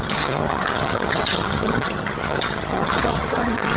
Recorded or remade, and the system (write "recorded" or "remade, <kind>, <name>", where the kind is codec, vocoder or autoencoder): remade, vocoder, HiFi-GAN